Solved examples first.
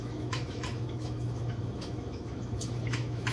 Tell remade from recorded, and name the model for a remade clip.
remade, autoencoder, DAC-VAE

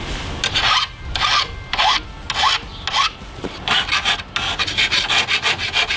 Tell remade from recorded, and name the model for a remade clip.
recorded